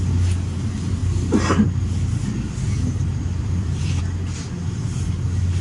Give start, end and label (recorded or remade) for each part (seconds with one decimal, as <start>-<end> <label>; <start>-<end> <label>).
0.0-3.4 recorded; 3.4-4.0 remade; 4.0-5.6 recorded